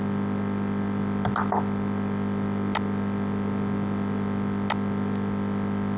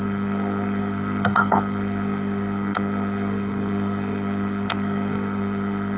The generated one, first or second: second